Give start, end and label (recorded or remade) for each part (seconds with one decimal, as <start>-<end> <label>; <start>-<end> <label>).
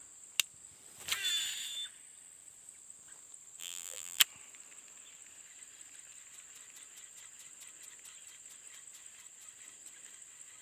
0.0-3.6 recorded; 3.6-4.2 remade; 4.2-10.6 recorded